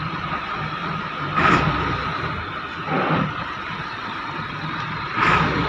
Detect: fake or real fake